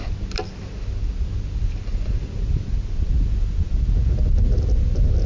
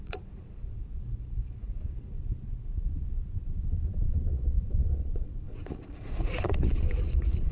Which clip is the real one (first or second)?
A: first